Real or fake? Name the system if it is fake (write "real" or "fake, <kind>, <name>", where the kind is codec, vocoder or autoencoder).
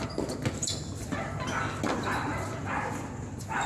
real